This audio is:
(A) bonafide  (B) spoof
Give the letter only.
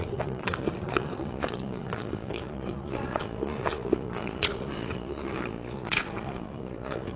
B